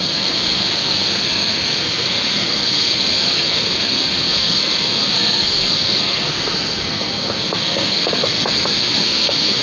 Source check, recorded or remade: remade